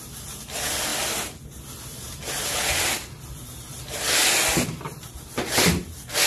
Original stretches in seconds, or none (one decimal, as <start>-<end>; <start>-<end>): 0.0-6.3